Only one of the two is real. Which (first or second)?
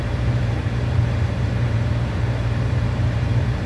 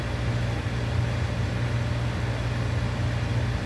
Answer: second